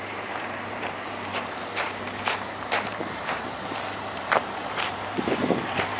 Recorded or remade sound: remade